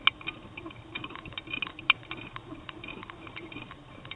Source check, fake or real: real